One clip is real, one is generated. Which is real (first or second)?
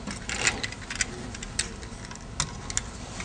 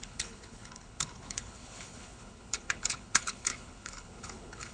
first